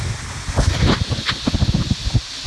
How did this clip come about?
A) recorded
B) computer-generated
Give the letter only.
A